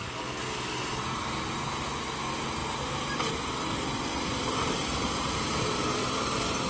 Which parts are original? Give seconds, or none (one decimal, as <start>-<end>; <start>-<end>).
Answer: 0.0-6.7